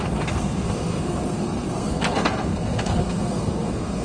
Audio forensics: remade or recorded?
remade